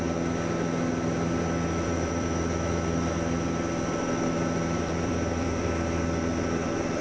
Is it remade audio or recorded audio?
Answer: remade